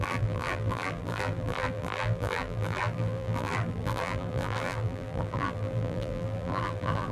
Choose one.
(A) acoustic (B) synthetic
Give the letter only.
B